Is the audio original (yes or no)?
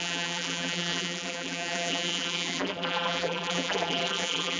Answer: no